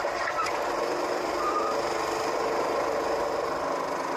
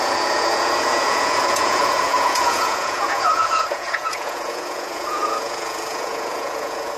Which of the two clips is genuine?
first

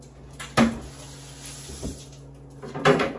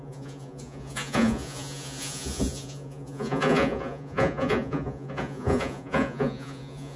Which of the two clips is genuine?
first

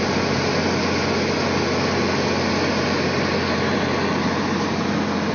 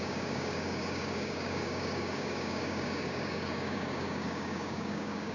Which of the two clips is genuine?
first